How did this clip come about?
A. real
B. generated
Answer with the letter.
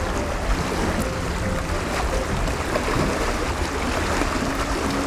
A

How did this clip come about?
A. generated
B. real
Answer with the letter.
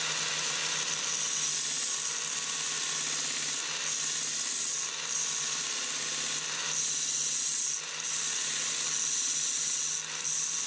B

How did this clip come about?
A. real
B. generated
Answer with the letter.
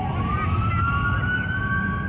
A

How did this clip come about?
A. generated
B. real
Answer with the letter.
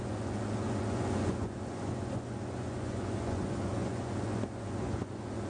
A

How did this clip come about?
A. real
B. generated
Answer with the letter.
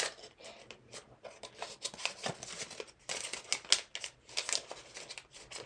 A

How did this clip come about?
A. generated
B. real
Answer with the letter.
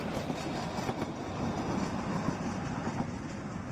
B